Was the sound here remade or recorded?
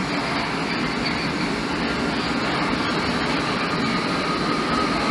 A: recorded